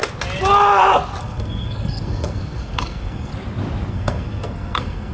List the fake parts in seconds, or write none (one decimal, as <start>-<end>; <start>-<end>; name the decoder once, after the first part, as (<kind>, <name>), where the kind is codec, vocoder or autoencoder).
1.2-3.3 (codec, SNAC); 3.9-5.1